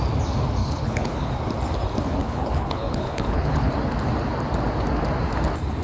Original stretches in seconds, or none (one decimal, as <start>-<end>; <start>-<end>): 0.0-0.6; 1.3-2.2; 3.7-5.8